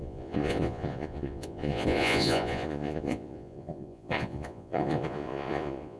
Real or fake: fake